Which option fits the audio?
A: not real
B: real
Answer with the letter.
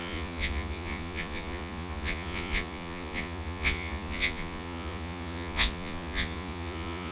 A